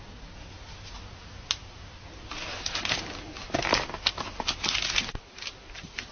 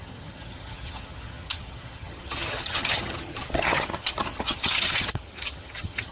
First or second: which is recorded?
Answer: first